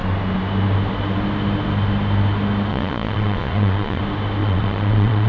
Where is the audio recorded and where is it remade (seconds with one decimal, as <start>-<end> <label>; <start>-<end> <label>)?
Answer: 0.0-2.7 recorded; 2.7-4.0 remade; 4.0-4.4 recorded; 4.4-5.3 remade